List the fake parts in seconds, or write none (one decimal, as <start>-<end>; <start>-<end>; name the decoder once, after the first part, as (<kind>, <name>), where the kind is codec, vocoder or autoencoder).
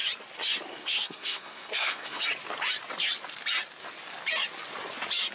0.7-2.2 (codec, SNAC)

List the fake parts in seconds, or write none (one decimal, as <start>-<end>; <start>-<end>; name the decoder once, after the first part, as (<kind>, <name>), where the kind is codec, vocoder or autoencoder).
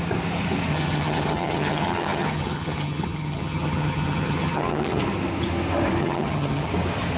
0.7-5.0 (vocoder, HiFi-GAN); 6.0-6.7